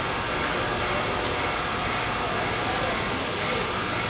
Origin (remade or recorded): recorded